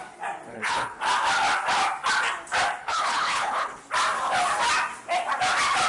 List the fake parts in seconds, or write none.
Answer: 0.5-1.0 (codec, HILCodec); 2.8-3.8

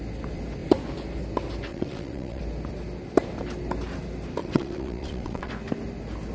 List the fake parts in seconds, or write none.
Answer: 1.7-2.4 (vocoder, WaveNeXt); 4.4-5.5

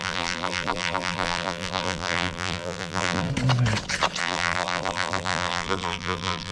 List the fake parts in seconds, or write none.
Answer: 0.0-3.3 (vocoder, BigVGAN v2); 4.2-6.5